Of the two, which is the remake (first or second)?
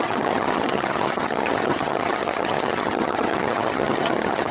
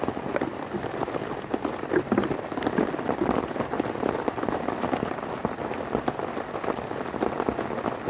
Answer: first